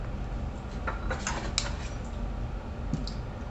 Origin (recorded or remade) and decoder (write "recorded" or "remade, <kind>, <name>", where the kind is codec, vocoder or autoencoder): recorded